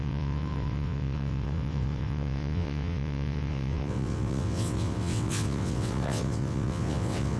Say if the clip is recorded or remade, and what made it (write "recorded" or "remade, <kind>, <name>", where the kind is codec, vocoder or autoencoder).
remade, vocoder, WaveNeXt